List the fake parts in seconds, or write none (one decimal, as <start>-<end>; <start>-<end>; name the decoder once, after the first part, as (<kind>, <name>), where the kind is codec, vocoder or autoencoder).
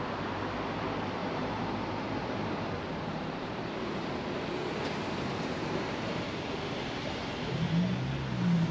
1.2-6.2 (vocoder, BigVGAN v2)